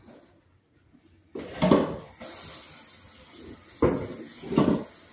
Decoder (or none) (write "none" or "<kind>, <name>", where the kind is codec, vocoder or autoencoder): none